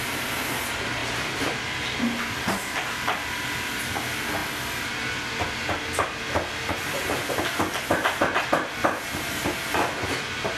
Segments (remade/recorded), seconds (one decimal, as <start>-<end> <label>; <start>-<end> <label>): 0.0-10.6 recorded